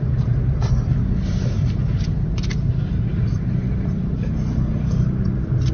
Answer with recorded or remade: recorded